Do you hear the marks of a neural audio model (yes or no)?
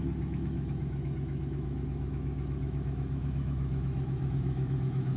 yes